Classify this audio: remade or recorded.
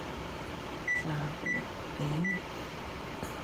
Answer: recorded